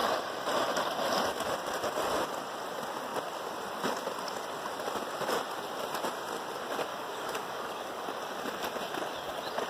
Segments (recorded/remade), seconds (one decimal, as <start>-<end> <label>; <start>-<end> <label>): 0.0-6.9 recorded; 6.9-8.0 remade; 8.0-9.7 recorded